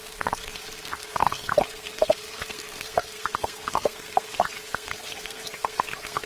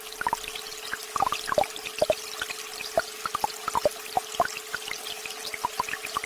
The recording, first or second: second